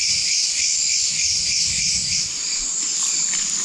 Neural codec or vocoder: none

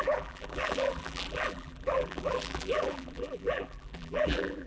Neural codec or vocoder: vocoder, BigVGAN v2